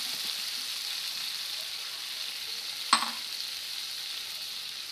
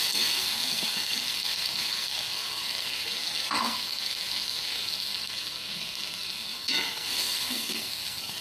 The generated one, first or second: second